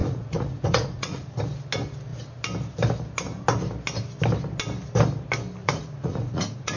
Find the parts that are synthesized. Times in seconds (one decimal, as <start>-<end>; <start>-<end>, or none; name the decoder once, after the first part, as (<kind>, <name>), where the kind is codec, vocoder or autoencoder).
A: 0.0-1.3 (vocoder, Vocos); 5.6-6.8